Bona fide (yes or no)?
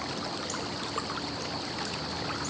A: yes